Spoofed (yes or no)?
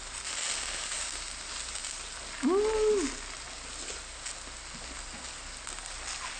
no